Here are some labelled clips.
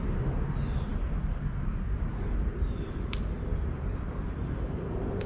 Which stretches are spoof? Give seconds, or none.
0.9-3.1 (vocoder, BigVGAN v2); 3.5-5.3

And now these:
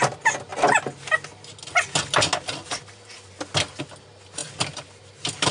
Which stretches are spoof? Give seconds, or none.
none

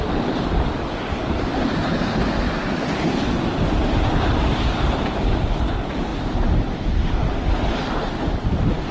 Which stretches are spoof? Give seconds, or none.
none

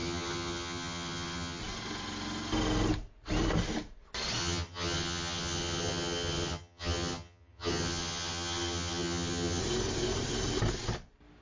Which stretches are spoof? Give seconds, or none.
0.0-1.6 (vocoder, HiFi-GAN); 4.4-9.6

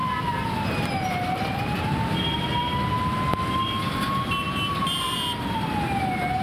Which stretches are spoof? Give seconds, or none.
none

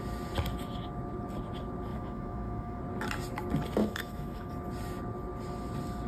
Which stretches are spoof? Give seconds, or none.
1.9-2.8 (autoencoder, DAC-VAE); 3.8-4.5

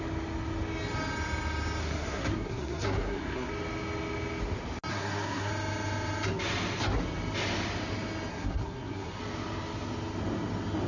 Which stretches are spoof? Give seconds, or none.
1.8-3.5 (codec, SNAC); 4.9-5.5; 8.3-9.2

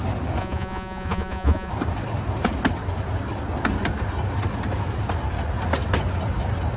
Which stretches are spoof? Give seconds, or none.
0.4-1.7 (vocoder, Vocos)